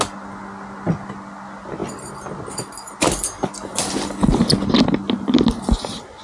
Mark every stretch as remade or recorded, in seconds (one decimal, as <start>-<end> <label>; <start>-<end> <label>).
0.0-6.2 recorded